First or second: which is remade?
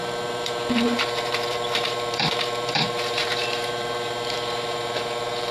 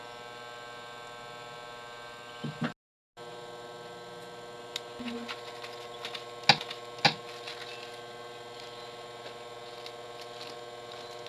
first